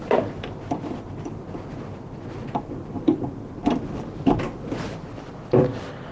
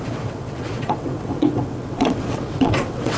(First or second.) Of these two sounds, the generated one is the second